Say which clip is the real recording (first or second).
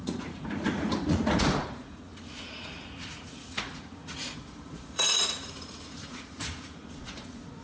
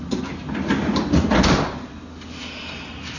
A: second